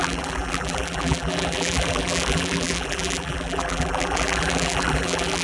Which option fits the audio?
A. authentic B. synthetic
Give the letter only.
B